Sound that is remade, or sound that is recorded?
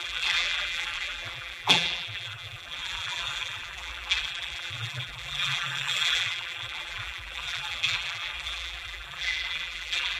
remade